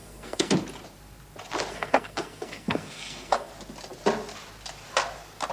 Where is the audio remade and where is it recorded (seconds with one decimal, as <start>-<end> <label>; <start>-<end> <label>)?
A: 0.0-0.5 remade; 0.5-1.7 recorded; 1.7-3.5 remade; 3.5-5.5 recorded